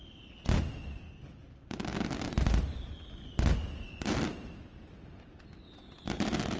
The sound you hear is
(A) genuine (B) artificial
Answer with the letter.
A